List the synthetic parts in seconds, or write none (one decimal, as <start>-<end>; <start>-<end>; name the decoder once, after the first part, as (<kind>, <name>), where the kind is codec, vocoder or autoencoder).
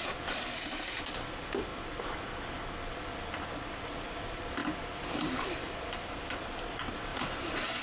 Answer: 0.0-1.7 (vocoder, BigVGAN v2); 3.0-7.1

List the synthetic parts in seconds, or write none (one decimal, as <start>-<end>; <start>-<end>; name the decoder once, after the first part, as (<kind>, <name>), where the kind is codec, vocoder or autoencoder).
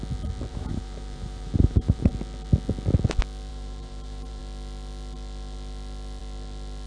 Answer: 0.5-2.1 (vocoder, BigVGAN v2); 3.5-4.4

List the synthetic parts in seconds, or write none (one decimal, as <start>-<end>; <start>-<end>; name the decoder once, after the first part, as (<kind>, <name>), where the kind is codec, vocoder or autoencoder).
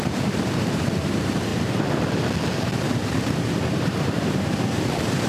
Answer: 0.0-1.5 (vocoder, BigVGAN v2); 2.7-5.3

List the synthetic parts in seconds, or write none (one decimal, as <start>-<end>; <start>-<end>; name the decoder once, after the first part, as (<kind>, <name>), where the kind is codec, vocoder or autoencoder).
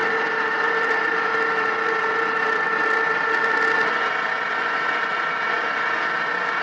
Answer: 0.0-4.0 (vocoder, BigVGAN v2)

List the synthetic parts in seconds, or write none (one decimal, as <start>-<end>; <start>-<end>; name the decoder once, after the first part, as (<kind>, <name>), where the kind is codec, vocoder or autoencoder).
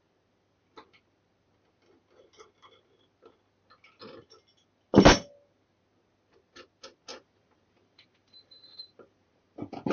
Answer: 7.1-9.9 (vocoder, BigVGAN v2)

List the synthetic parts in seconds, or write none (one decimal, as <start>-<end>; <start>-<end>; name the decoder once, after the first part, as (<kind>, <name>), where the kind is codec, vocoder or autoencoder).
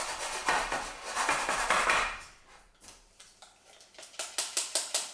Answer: none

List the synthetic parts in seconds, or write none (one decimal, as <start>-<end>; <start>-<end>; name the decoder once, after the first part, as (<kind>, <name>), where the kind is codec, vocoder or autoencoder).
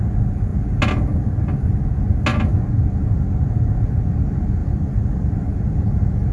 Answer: 4.6-6.3 (vocoder, BigVGAN v2)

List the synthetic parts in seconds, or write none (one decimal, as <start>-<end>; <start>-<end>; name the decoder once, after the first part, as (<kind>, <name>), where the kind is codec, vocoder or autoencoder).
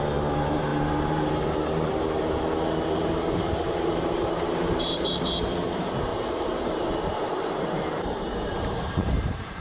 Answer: 0.0-9.6 (vocoder, BigVGAN v2)